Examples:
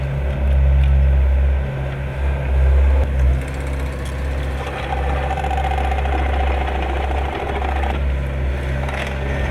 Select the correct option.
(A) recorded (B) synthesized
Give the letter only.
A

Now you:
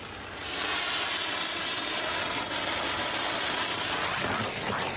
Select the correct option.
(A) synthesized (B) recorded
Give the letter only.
B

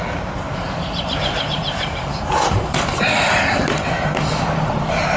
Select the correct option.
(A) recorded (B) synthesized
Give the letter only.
B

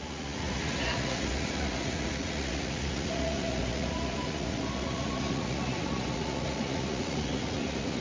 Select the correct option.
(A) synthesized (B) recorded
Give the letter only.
A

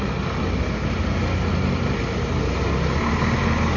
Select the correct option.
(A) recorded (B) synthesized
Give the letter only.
A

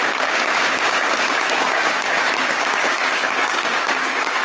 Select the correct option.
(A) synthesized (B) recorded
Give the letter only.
A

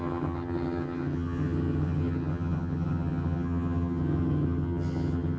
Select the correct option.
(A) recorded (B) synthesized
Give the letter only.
B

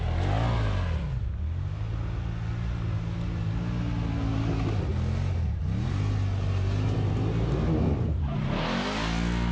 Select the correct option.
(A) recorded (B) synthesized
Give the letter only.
A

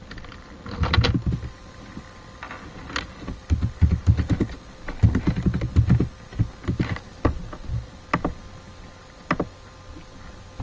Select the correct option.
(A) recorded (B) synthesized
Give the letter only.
A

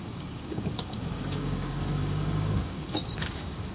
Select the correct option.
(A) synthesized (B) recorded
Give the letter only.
A